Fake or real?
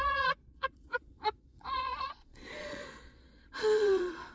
fake